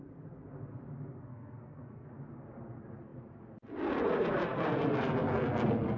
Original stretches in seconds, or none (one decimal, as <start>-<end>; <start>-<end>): 0.0-1.3; 2.1-6.0